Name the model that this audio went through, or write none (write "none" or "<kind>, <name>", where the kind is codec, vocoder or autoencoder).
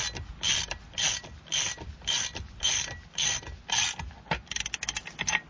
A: none